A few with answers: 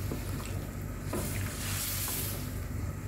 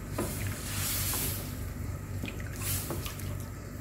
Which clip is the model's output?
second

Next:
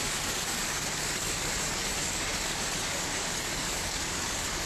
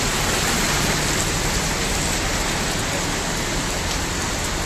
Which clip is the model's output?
first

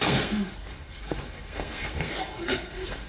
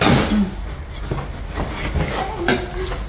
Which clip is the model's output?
first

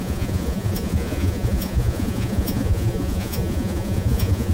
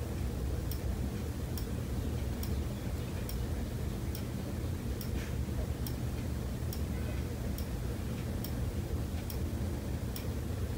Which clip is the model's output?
first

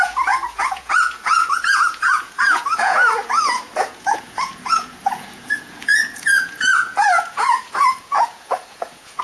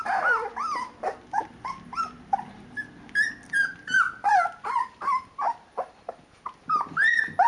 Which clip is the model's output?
first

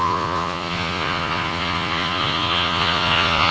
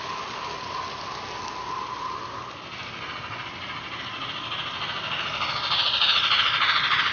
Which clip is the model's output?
first